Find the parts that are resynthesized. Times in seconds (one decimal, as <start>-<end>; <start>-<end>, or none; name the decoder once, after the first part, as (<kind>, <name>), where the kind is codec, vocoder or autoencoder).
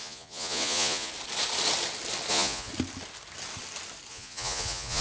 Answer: 0.0-1.1 (vocoder, Vocos); 2.3-2.7; 4.1-5.0